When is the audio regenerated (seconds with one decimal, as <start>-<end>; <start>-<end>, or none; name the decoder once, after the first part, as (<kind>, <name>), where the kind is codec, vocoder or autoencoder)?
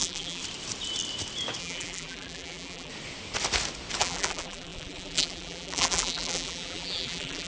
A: 0.0-0.4 (vocoder, BigVGAN v2); 1.6-2.9; 4.0-7.5